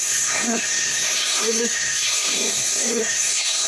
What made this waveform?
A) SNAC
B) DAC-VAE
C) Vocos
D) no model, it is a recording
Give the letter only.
A